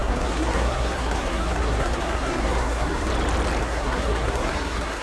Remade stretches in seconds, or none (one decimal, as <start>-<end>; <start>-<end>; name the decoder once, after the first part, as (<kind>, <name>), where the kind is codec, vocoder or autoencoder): 0.0-3.1 (codec, SNAC); 3.6-5.0